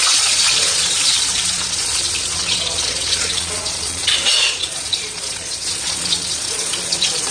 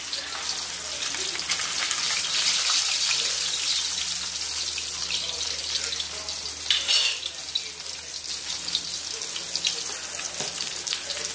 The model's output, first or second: first